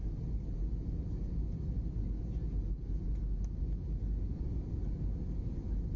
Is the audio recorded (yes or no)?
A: yes